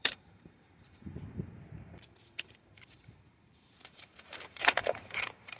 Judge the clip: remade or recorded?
remade